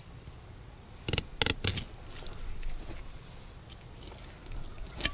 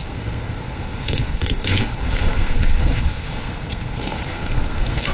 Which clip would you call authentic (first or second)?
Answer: first